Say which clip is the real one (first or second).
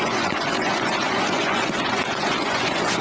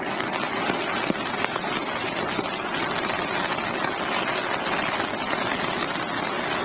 second